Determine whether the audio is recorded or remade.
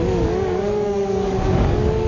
remade